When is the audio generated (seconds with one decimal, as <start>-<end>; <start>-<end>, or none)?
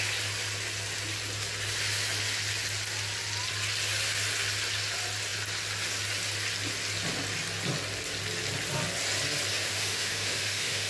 9.5-10.9